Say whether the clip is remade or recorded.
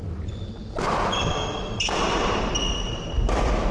recorded